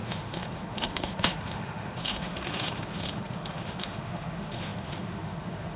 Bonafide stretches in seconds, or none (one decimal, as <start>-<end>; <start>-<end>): none